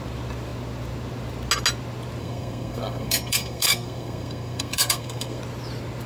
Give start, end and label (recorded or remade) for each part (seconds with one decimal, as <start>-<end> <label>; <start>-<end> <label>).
0.0-2.2 recorded; 2.2-5.4 remade; 5.4-6.1 recorded